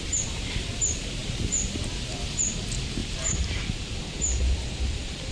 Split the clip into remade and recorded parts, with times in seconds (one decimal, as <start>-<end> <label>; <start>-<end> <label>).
0.0-5.3 remade